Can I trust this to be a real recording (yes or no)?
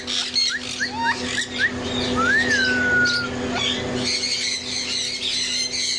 yes